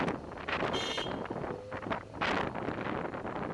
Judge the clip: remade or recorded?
recorded